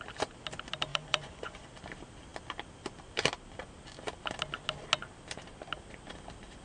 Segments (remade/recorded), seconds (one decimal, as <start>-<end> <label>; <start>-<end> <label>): 0.0-0.9 recorded; 0.9-1.7 remade; 1.7-6.6 recorded